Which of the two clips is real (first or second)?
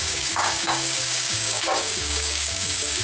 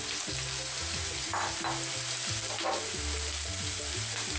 second